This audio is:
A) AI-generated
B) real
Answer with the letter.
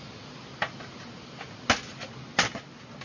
B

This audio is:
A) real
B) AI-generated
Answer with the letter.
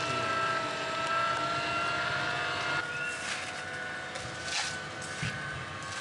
A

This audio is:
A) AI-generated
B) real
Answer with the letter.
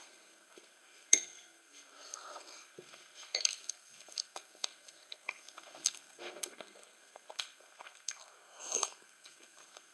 A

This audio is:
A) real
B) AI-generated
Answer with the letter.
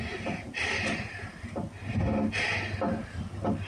A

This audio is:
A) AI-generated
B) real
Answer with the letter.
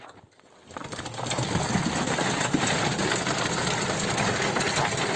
B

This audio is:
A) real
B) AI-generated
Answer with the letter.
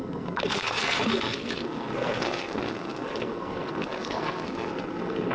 B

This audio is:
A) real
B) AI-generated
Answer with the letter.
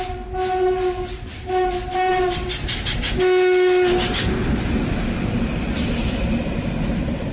A